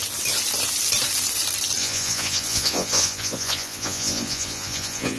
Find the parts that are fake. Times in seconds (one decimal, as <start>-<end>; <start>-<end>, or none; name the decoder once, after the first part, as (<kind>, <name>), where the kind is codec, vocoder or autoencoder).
1.8-5.2 (vocoder, Vocos)